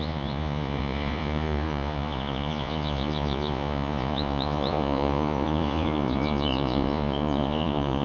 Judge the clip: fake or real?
fake